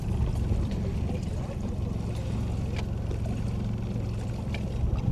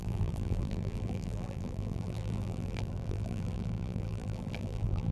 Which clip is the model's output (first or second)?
second